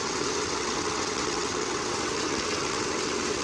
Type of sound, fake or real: fake